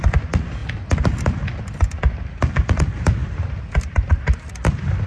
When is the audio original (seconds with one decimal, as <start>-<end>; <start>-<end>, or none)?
0.0-5.1